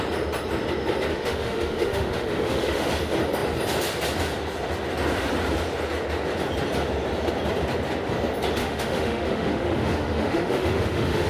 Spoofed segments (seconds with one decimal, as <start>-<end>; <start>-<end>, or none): 1.1-2.9; 8.6-11.3